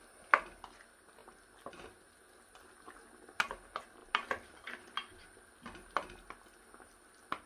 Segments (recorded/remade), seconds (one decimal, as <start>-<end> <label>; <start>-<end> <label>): 0.0-7.5 recorded